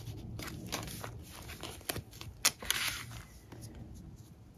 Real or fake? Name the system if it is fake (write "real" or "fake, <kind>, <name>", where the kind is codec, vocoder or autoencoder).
real